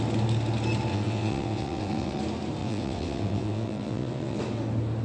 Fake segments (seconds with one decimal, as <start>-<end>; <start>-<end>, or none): 0.9-2.2; 2.6-4.4